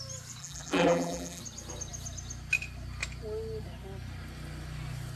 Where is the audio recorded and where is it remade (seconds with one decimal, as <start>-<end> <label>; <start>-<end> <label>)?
0.0-0.4 recorded; 0.4-1.4 remade; 1.4-5.2 recorded